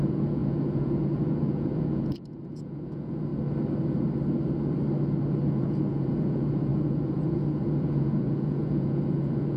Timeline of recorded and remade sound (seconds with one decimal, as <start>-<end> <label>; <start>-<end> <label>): 0.0-3.3 remade; 3.3-5.5 recorded; 5.5-9.6 remade